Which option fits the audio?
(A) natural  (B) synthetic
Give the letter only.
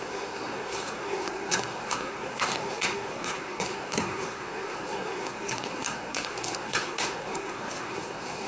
B